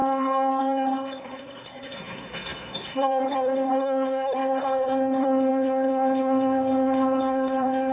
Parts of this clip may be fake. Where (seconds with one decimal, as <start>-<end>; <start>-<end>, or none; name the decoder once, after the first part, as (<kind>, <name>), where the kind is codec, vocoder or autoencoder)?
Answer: 0.0-7.9 (codec, SNAC)